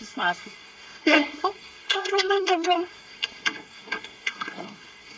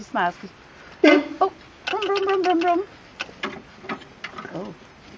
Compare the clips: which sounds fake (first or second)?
first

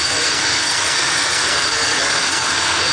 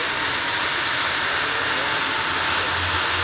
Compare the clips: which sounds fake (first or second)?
first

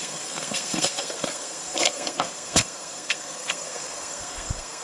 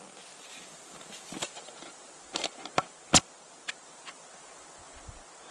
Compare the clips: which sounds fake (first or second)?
first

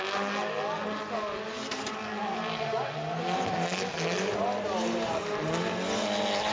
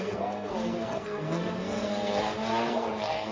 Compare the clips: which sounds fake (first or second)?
second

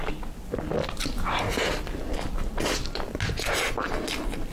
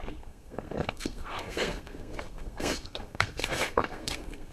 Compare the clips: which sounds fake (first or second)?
second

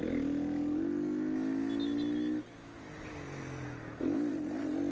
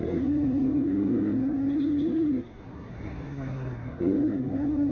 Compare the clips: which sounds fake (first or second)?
second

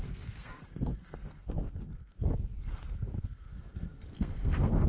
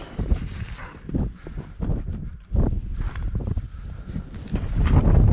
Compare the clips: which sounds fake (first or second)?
first